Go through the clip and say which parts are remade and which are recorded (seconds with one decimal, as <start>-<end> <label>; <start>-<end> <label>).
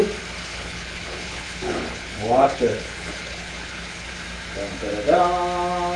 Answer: 0.0-0.5 recorded; 0.5-4.1 remade; 4.1-6.0 recorded